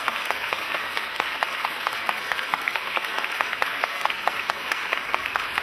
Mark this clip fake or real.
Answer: fake